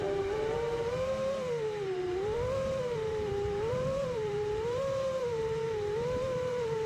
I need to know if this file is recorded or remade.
remade